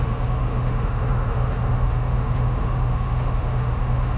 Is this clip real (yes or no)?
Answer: no